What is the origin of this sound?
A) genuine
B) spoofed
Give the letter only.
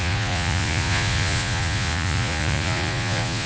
B